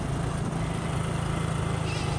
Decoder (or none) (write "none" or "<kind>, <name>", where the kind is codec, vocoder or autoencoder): none